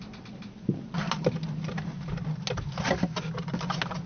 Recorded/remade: recorded